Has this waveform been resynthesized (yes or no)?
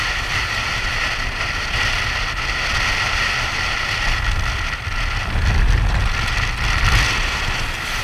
no